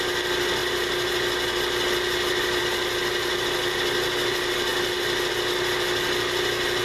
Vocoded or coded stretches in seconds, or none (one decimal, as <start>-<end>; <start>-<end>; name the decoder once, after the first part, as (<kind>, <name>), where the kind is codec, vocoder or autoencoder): none